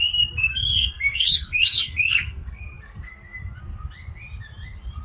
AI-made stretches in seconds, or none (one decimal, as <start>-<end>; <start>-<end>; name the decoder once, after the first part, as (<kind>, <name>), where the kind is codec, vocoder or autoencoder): 0.4-3.1 (codec, SNAC)